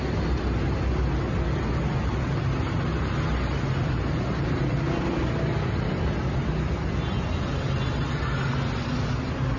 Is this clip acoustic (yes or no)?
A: yes